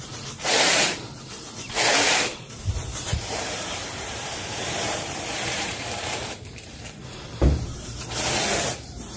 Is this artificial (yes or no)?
yes